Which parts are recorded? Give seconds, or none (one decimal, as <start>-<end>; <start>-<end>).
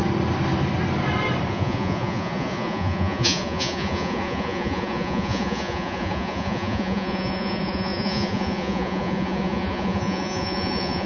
0.0-1.5